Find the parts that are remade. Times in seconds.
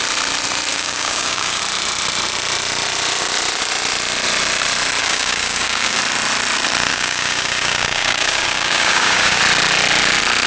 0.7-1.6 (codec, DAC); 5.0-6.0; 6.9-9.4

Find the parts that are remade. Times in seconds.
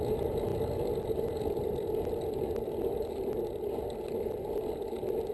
none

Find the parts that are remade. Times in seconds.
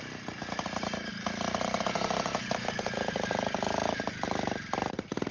0.0-5.3 (vocoder, BigVGAN v2)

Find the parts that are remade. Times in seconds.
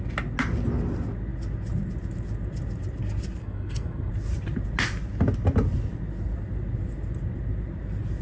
3.4-4.1 (codec, SNAC)